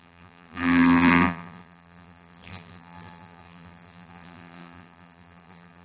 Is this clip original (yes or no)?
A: no